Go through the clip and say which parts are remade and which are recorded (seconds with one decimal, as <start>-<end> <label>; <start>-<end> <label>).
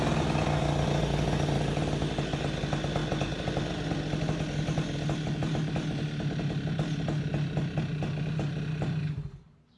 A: 0.0-9.8 recorded